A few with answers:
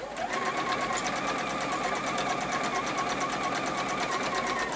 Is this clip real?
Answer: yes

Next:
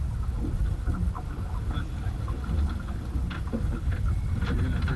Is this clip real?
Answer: yes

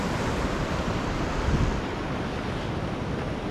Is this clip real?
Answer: yes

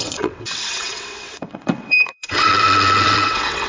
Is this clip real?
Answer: no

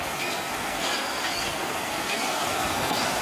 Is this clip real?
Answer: no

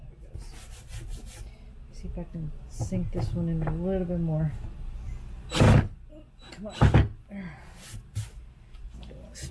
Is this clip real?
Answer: yes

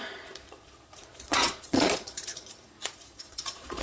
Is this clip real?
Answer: no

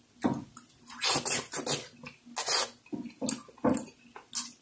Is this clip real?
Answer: yes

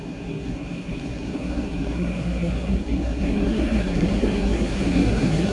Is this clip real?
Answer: no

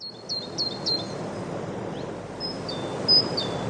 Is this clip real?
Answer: yes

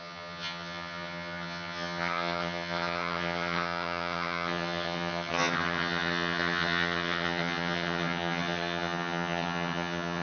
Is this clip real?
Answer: no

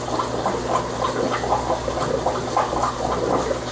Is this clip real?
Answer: yes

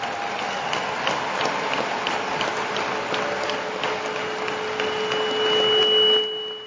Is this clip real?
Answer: yes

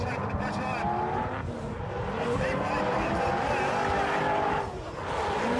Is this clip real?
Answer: yes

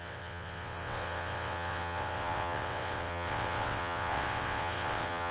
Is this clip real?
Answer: no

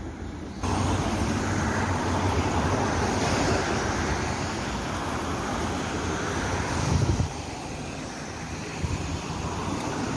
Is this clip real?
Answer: yes